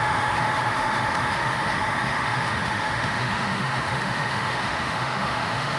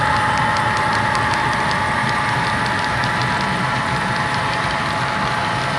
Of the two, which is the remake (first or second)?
first